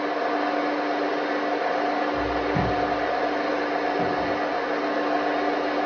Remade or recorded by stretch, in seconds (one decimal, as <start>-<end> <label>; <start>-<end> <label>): 0.0-5.9 recorded